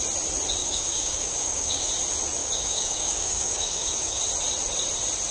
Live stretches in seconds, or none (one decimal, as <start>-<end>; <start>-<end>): 0.0-0.6; 1.9-2.4; 4.2-5.3